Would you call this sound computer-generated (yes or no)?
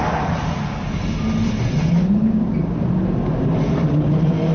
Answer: no